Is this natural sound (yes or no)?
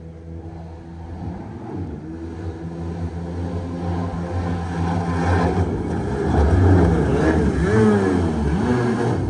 yes